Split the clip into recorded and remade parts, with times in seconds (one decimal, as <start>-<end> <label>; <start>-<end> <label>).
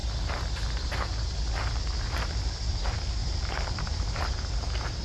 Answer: 0.0-3.2 recorded; 3.2-4.3 remade; 4.3-5.0 recorded